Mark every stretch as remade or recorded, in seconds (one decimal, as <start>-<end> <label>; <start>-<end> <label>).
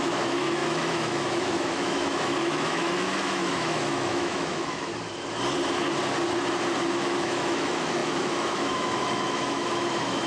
0.0-4.9 remade; 4.9-6.9 recorded; 6.9-10.3 remade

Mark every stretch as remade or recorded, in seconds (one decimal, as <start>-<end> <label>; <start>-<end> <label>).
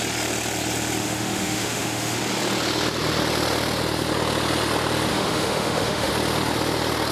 0.0-1.0 recorded; 1.0-2.2 remade; 2.2-5.1 recorded; 5.1-6.1 remade; 6.1-7.1 recorded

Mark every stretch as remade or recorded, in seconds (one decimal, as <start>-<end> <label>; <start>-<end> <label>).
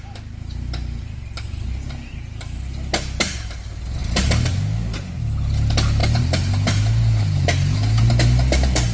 0.0-8.9 recorded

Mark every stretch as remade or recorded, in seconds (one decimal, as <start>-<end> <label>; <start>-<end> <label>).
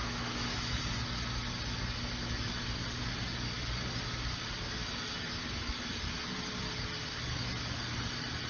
0.0-0.8 remade; 0.8-8.5 recorded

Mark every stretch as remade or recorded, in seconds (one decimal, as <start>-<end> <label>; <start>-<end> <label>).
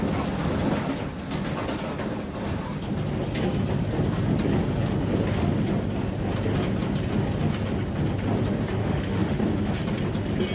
0.0-8.8 recorded; 8.8-9.4 remade; 9.4-10.5 recorded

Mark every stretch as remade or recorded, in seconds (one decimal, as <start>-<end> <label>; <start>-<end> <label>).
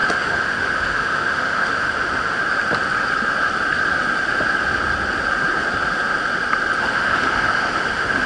0.0-2.4 remade; 2.4-6.8 recorded; 6.8-8.3 remade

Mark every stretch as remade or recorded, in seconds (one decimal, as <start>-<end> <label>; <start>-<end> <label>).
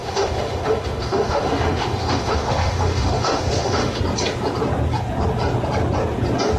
0.0-4.0 remade; 4.0-6.6 recorded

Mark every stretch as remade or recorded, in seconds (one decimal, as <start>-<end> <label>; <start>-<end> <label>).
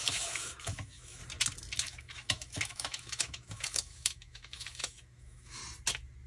0.0-1.2 remade; 1.2-1.8 recorded; 1.8-5.6 remade; 5.6-6.3 recorded